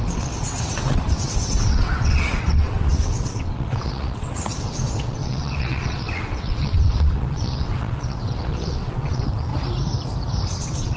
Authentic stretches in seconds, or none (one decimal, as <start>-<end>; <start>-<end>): 9.5-10.6